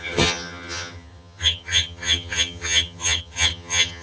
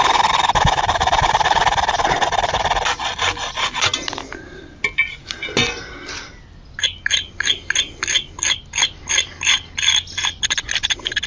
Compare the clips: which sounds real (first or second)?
second